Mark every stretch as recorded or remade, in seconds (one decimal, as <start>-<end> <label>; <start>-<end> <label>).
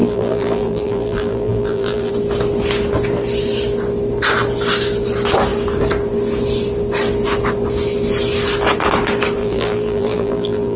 0.0-2.1 remade; 2.1-9.4 recorded; 9.4-10.8 remade